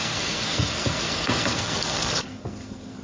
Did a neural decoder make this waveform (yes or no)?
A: yes